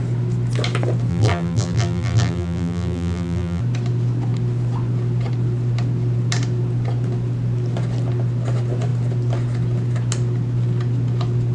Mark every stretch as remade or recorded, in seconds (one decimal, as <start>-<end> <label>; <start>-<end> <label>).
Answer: 0.0-1.1 recorded; 1.1-3.6 remade; 3.6-11.5 recorded